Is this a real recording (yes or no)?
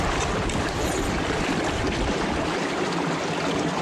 yes